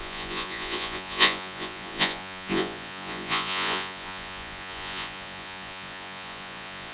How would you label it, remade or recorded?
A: remade